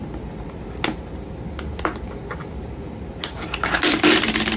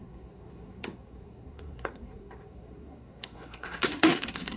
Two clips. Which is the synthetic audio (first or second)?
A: second